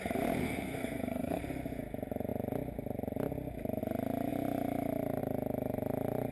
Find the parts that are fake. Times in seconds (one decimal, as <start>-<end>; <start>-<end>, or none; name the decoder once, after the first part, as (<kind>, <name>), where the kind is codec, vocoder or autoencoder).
0.4-1.4 (codec, SNAC)